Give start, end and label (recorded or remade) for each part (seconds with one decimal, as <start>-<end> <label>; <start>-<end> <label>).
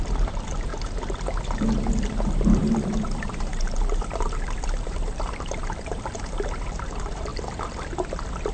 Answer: 0.0-0.7 remade; 0.7-1.4 recorded; 1.4-7.3 remade; 7.3-8.5 recorded